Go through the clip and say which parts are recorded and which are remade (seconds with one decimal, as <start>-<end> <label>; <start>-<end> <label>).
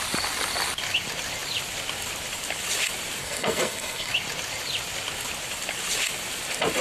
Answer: 0.0-3.2 recorded; 3.2-4.1 remade; 4.1-6.8 recorded